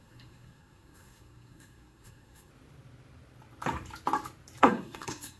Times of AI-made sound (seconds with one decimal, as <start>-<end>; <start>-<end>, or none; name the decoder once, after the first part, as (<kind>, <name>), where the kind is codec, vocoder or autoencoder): 0.0-2.5 (codec, SNAC); 4.6-5.4